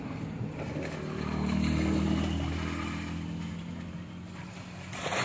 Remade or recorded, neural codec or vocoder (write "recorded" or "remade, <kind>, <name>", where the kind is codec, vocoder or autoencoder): recorded